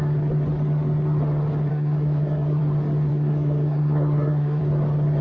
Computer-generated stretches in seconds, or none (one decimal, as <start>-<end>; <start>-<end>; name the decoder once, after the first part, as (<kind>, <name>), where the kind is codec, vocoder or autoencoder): 1.7-2.6 (codec, SNAC); 3.1-4.6